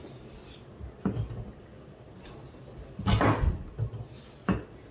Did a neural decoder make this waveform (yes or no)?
no